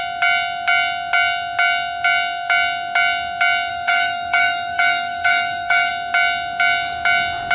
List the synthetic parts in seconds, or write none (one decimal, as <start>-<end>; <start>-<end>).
3.7-5.9